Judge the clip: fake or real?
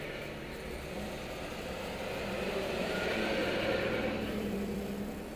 fake